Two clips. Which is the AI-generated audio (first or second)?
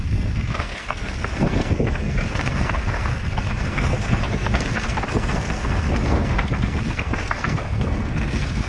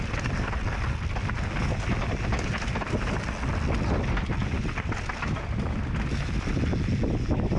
first